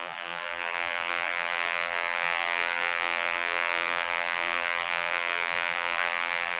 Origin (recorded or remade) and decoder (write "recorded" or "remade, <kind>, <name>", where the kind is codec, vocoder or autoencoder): remade, vocoder, BigVGAN v2